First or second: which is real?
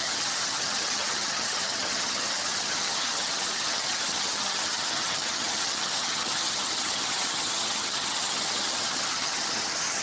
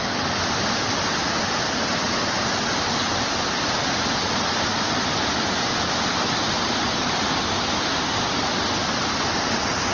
second